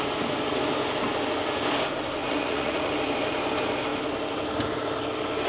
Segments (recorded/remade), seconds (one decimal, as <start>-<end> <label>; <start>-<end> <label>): 0.0-2.2 recorded; 2.2-2.9 remade; 2.9-5.5 recorded